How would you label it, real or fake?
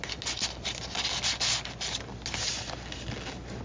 real